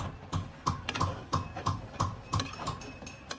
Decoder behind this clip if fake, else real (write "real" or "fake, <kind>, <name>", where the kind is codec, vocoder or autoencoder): real